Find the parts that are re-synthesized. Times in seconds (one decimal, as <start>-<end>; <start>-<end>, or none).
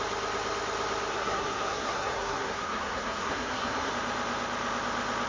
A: 1.1-3.9